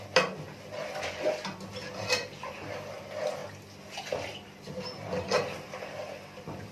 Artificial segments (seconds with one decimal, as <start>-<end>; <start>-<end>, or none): none